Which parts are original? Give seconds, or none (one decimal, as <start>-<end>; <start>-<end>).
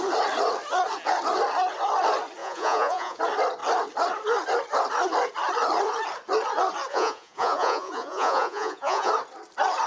0.0-2.4; 3.2-6.9; 9.1-9.9